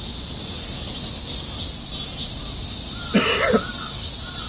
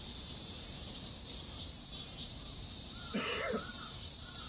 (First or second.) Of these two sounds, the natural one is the first